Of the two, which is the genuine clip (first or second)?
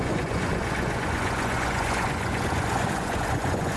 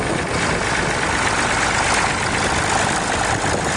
second